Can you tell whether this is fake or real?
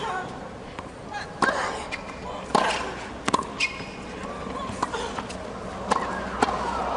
real